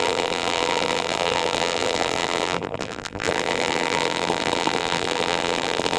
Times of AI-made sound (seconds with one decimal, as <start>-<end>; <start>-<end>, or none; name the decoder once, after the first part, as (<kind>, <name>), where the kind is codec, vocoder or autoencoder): 0.0-6.0 (vocoder, BigVGAN v2)